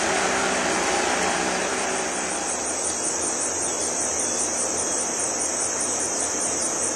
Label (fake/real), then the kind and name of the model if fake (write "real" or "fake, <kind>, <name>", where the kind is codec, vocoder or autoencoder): fake, vocoder, BigVGAN v2